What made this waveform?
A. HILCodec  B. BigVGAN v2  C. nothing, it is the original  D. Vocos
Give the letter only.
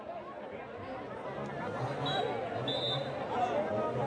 C